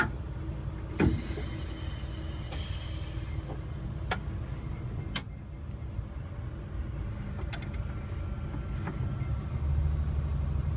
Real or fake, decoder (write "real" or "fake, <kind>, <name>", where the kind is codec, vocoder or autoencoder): real